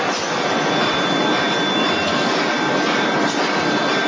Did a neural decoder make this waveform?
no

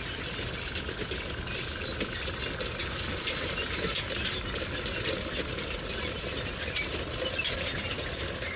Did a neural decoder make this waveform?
no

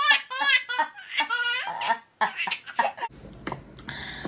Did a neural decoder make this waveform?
no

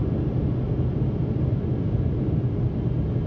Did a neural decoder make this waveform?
no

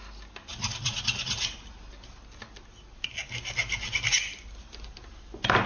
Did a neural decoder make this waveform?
no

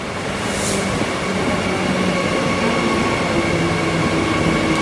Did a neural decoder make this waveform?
no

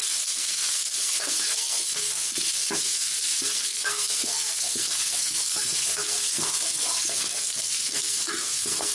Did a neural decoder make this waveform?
yes